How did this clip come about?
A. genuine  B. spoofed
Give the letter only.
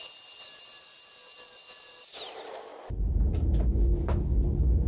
A